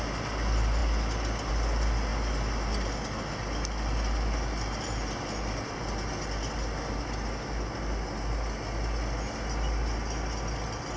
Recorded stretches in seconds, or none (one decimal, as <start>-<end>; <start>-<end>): 0.0-11.0